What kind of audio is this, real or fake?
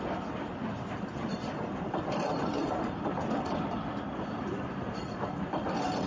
fake